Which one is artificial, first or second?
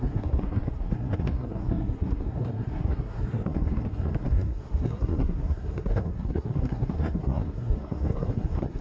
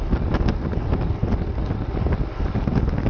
first